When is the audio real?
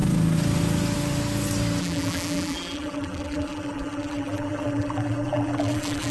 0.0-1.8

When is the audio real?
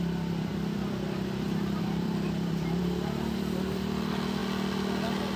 4.4-5.4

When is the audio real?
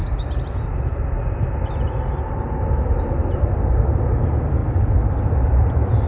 0.0-6.1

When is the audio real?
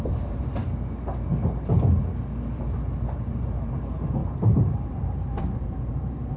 0.6-3.3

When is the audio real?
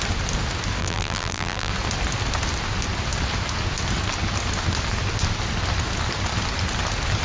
0.0-0.8; 1.7-7.2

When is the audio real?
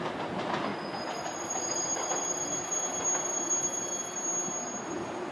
0.0-5.3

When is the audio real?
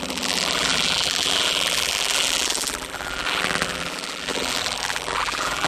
none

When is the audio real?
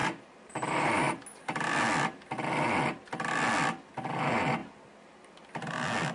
0.9-6.1